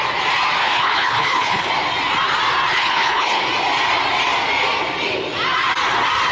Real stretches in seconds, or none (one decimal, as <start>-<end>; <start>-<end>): 0.0-0.6; 1.7-2.7; 3.4-6.3